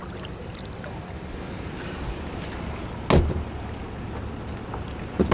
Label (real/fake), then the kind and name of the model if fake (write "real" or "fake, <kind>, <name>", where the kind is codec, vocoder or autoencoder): real